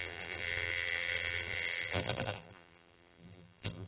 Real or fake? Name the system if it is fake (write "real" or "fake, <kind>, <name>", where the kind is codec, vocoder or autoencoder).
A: fake, vocoder, BigVGAN v2